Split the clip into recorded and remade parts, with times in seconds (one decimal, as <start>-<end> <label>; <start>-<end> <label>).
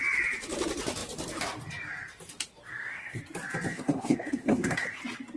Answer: 0.0-2.7 recorded; 2.7-3.2 remade; 3.2-3.7 recorded; 3.7-5.0 remade; 5.0-5.4 recorded